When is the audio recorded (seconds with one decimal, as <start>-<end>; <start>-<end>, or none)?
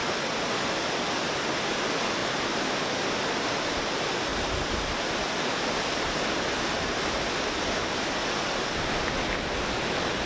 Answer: 0.0-10.3